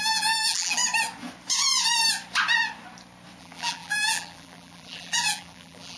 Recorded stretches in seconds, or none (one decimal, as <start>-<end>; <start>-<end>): 0.8-3.4